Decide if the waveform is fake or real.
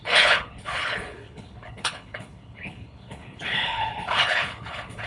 fake